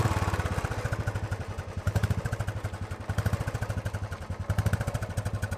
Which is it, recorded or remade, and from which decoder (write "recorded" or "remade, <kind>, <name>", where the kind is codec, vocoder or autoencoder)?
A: recorded